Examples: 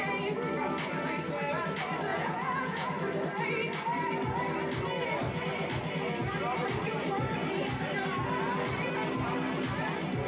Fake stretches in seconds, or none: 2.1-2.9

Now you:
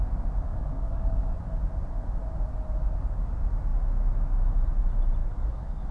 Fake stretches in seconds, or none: 0.5-1.3; 5.2-5.9

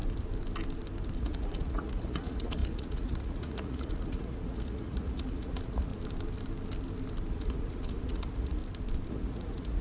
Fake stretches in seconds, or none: 1.2-5.9; 7.3-8.6; 9.1-9.8

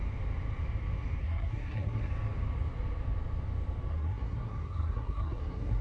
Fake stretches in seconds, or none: 1.2-2.1; 3.9-5.8